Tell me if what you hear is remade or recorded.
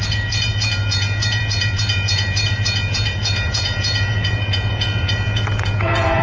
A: remade